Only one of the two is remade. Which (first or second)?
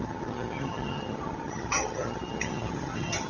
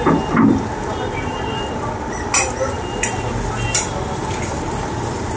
first